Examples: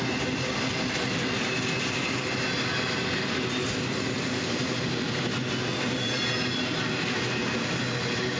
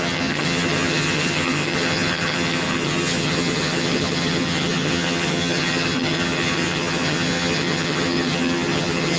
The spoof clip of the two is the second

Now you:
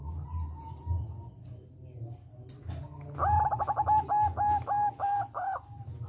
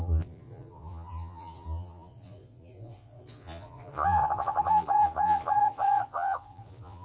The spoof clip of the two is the second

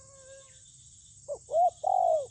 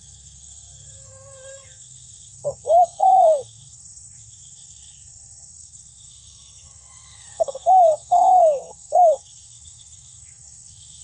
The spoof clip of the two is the second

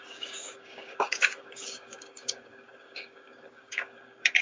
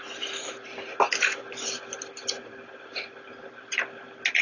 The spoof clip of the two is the first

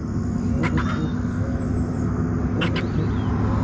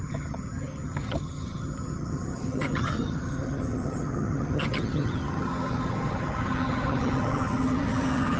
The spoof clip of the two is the second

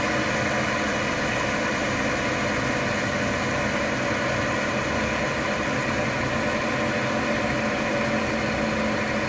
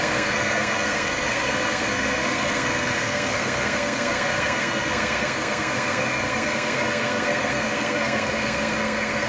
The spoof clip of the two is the second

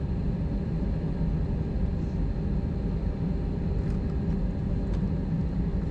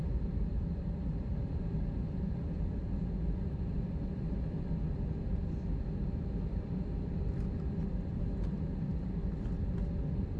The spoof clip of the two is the second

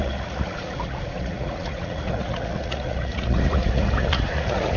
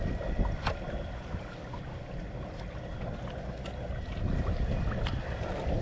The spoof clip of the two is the first